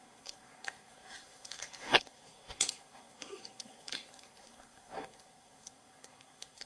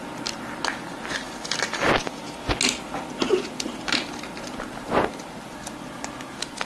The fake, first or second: first